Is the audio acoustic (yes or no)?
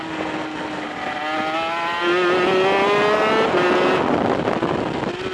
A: yes